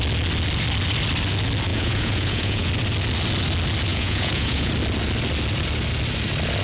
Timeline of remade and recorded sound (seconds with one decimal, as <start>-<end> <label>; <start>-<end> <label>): 0.0-1.7 recorded; 1.7-2.7 remade; 2.7-3.9 recorded; 3.9-4.7 remade; 4.7-6.6 recorded